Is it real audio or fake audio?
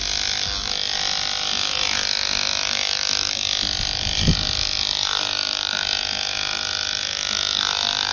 real